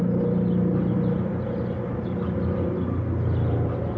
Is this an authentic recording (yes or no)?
yes